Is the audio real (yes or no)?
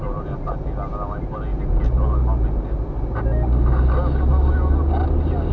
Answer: yes